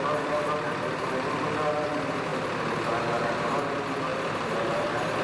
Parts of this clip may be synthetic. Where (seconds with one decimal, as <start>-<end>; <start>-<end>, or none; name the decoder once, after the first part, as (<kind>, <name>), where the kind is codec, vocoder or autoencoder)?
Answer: 4.1-4.7 (vocoder, BigVGAN v2)